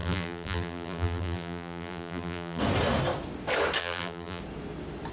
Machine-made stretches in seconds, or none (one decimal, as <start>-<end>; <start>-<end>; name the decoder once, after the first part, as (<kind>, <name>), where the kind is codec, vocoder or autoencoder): 0.0-2.6 (vocoder, BigVGAN v2); 3.8-4.4